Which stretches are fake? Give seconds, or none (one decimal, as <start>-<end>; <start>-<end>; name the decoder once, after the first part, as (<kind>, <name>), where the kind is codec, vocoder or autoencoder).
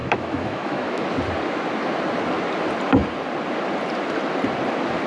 0.0-1.0 (autoencoder, DAC-VAE)